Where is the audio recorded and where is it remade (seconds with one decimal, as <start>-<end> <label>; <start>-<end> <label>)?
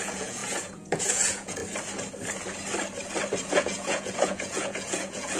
0.0-1.6 remade; 1.6-3.5 recorded; 3.5-5.4 remade